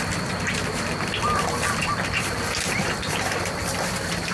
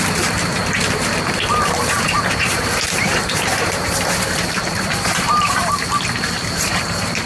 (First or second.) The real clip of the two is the first